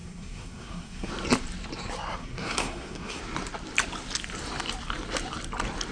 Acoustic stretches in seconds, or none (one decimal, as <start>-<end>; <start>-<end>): 1.1-2.2; 3.2-5.9